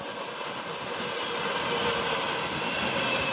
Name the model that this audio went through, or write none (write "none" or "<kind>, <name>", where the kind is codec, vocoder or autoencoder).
none